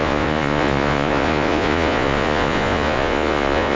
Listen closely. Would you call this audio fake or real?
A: fake